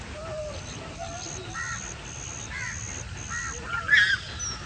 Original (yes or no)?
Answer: yes